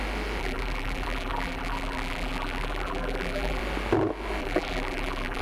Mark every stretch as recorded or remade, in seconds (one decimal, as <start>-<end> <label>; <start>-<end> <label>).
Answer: 0.0-0.4 recorded; 0.4-3.6 remade; 3.6-4.4 recorded; 4.4-5.4 remade